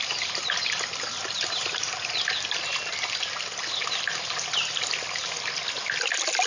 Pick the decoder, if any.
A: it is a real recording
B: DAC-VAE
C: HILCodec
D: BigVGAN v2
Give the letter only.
A